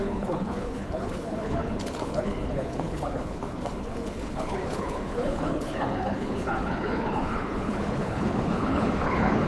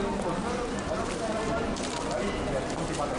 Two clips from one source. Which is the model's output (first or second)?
first